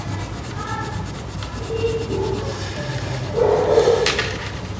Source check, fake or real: real